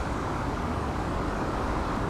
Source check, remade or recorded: remade